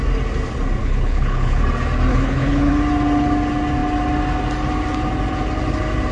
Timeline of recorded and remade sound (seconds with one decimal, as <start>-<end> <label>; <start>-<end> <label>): 0.0-0.8 recorded; 0.8-1.6 remade; 1.6-2.1 recorded; 2.1-2.7 remade; 2.7-6.1 recorded